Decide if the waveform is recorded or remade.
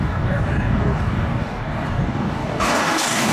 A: remade